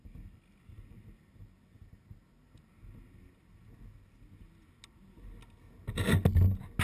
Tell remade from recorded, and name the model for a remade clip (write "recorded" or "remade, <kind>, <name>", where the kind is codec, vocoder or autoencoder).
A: recorded